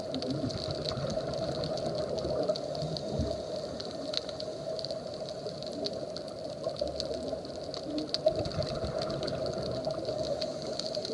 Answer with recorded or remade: recorded